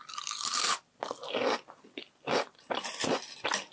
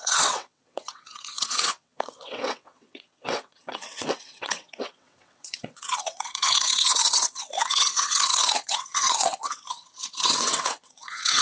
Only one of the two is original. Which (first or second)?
first